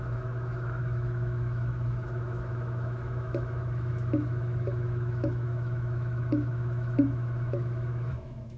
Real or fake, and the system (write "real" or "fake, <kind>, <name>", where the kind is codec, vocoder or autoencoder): fake, autoencoder, DAC-VAE